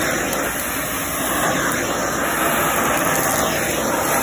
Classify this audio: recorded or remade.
recorded